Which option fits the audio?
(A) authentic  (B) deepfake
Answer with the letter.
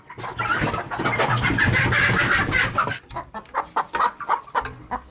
A